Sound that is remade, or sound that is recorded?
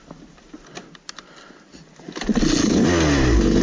recorded